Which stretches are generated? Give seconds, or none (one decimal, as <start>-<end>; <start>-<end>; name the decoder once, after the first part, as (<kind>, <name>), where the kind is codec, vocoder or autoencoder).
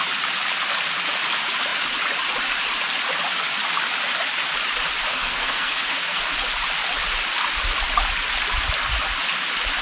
5.1-6.2 (codec, SNAC)